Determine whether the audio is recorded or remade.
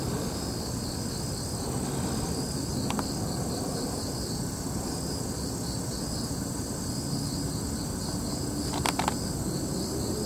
recorded